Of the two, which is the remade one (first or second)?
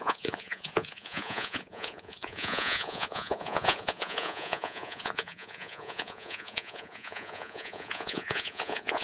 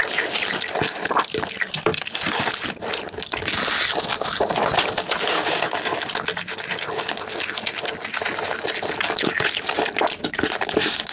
first